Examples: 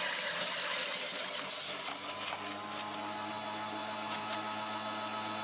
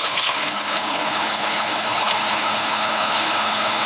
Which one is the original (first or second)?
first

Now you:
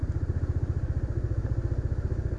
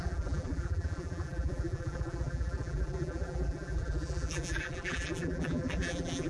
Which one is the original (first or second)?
first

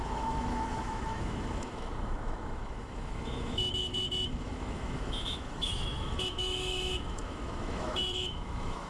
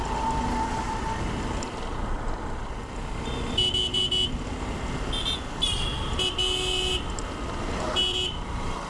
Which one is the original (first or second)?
second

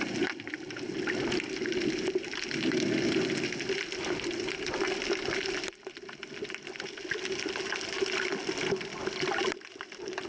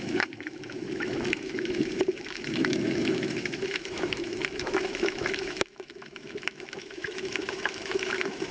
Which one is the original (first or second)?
first